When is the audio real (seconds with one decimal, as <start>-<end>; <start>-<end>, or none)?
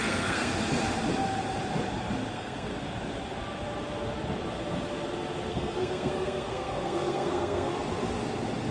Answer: 0.5-2.3; 2.7-5.5; 7.7-8.7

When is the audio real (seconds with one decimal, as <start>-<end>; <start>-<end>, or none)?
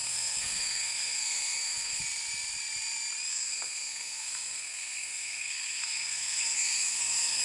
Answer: 2.0-3.3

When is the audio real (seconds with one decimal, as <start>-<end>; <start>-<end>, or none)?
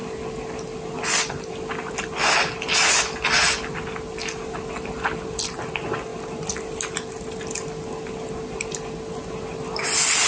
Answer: 0.0-10.3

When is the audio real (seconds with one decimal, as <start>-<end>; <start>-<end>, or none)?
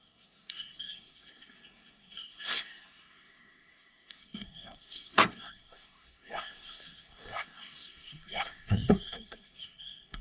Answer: none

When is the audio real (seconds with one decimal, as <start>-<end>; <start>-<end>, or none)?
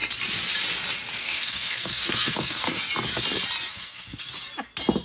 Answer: 0.0-1.2; 2.8-3.7; 4.3-5.0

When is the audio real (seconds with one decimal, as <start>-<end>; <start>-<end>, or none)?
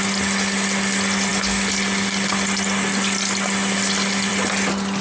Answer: 0.0-5.0